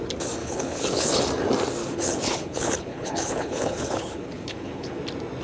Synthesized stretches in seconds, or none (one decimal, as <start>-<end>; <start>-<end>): 0.4-1.2; 1.8-5.0